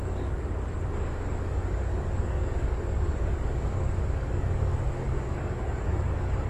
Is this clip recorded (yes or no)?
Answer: no